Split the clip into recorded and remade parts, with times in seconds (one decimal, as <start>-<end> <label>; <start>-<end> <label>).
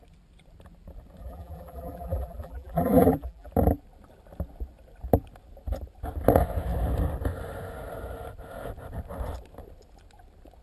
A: 0.0-1.2 recorded; 1.2-3.5 remade; 3.5-10.6 recorded